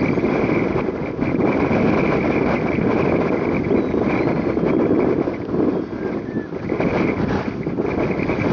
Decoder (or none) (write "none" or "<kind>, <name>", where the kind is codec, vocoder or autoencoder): none